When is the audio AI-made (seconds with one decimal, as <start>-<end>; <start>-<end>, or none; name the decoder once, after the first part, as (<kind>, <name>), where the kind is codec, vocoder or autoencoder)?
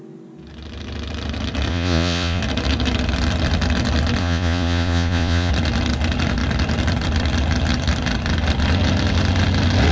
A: 1.7-2.4 (vocoder, Vocos); 4.2-5.5